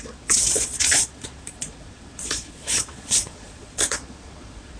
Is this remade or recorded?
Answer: remade